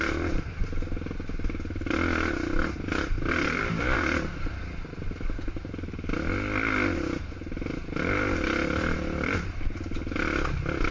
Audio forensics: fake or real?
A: real